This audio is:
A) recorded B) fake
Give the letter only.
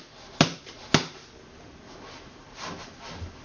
A